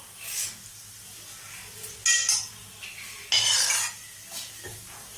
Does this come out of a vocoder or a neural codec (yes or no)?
no